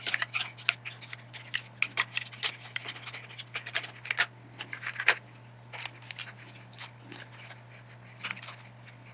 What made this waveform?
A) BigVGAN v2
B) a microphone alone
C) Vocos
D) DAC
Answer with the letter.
B